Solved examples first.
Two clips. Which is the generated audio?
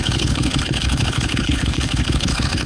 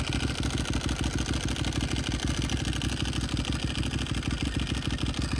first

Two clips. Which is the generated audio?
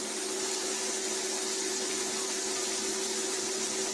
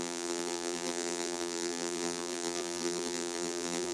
second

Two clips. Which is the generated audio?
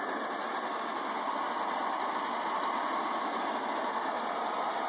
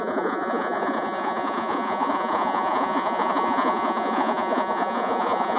second